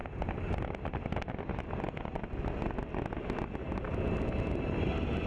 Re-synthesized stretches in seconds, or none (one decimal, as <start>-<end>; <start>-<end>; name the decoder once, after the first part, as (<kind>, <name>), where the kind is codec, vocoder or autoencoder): none